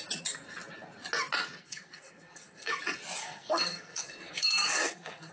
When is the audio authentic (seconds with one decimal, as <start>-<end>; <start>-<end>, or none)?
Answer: 0.0-1.6; 2.8-3.2